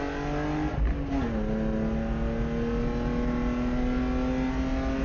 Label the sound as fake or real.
real